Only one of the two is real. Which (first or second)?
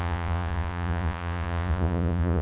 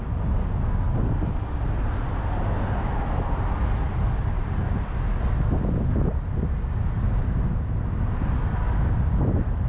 second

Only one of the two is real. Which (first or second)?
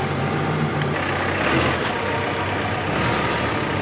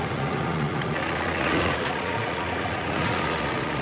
first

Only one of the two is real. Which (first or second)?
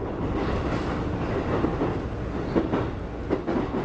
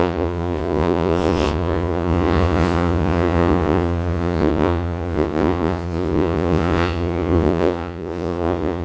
first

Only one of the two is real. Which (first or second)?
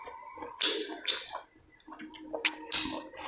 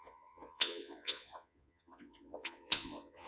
first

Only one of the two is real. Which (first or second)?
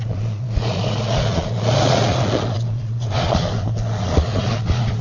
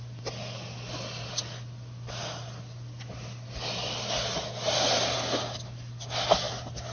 second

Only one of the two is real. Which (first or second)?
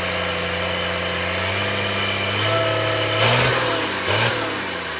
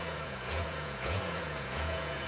first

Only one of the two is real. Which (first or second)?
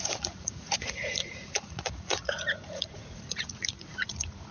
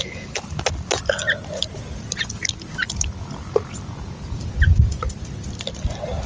second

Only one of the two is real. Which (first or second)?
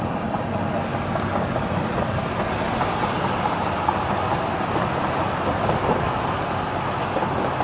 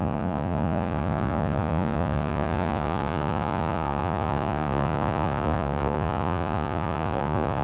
first